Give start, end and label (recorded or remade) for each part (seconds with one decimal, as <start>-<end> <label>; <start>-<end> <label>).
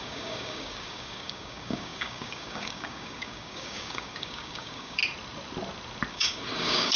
0.0-5.0 remade; 5.0-6.1 recorded; 6.1-7.0 remade